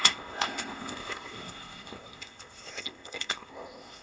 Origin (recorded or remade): remade